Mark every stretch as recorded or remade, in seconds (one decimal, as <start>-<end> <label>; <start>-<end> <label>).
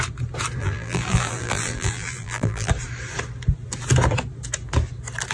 0.0-0.6 recorded; 0.6-2.7 remade; 2.7-5.3 recorded